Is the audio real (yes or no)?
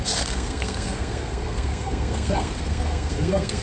no